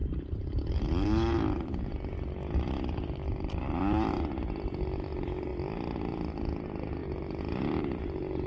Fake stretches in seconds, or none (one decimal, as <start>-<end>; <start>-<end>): 0.0-0.8